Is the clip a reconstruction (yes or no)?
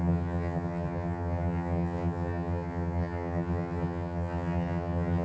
yes